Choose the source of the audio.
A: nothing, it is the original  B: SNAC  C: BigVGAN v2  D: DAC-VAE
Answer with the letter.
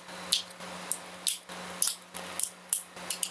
A